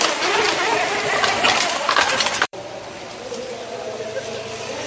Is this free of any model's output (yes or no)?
no